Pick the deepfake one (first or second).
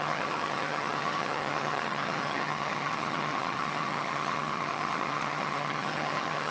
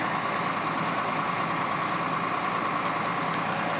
first